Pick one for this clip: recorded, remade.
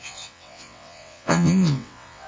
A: remade